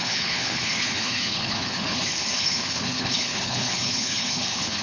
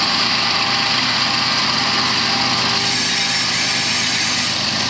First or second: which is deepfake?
first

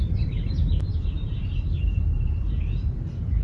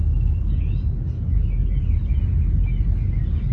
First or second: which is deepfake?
first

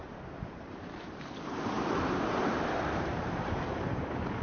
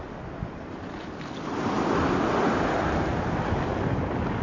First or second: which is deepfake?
first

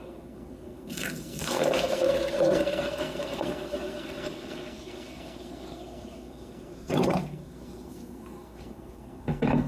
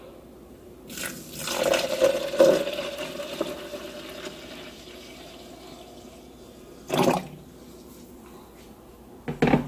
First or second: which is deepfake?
first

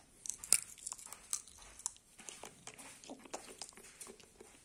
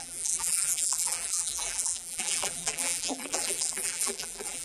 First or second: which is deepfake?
second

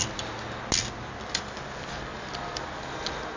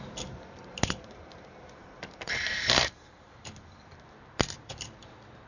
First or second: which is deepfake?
second